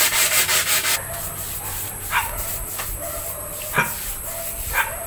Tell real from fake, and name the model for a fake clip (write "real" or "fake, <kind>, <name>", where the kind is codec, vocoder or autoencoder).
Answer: real